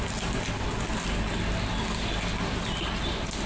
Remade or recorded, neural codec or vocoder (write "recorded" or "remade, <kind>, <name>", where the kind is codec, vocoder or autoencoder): recorded